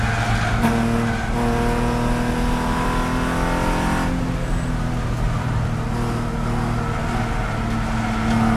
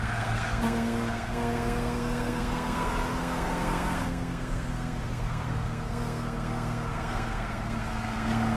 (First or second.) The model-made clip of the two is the second